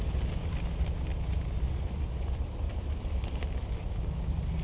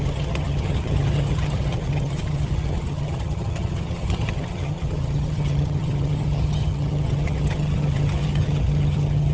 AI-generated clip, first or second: second